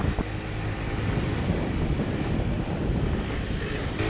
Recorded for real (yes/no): yes